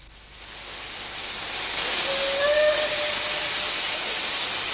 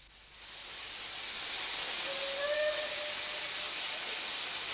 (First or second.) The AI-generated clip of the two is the first